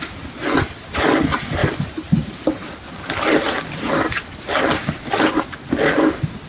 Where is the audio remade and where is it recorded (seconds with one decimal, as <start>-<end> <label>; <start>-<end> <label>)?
0.0-6.5 recorded